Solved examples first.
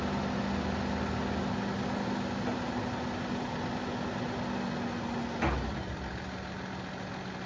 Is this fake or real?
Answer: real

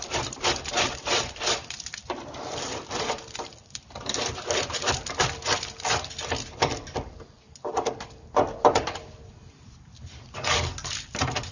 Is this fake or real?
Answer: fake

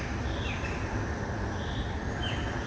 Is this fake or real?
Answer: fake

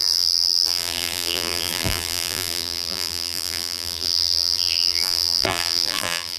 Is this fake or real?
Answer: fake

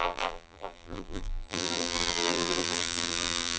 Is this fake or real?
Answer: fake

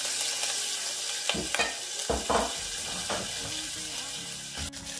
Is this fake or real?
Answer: real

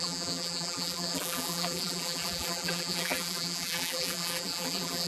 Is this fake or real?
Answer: fake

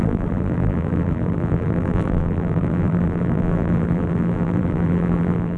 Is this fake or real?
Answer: fake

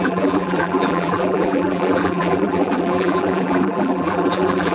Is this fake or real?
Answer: fake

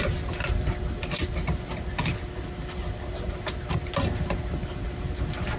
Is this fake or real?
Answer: real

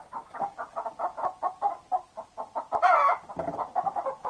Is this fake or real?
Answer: real